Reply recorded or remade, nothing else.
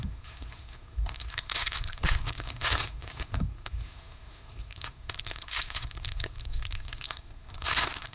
remade